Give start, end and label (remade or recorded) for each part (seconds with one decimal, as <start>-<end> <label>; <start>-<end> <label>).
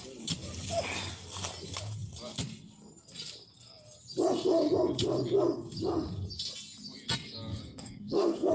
0.0-7.5 recorded; 7.5-8.5 remade